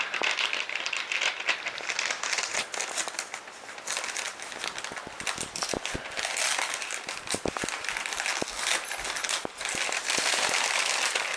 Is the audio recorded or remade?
recorded